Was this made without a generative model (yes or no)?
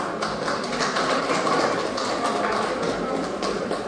yes